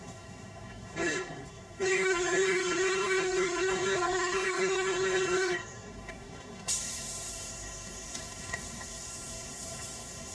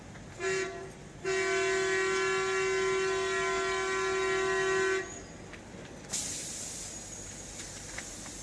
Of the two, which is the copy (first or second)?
first